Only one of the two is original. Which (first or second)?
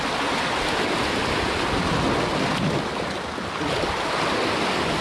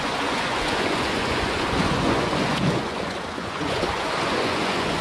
first